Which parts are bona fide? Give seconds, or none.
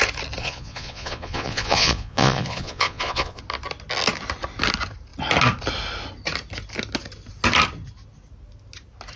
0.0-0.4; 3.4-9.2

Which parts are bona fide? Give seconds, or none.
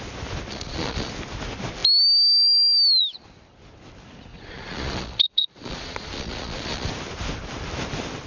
0.0-0.5; 1.1-4.3; 6.9-8.3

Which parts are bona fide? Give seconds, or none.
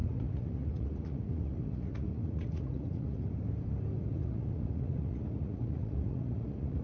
3.3-4.1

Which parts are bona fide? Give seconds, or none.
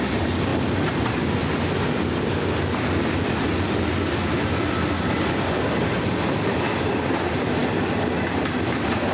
0.0-9.1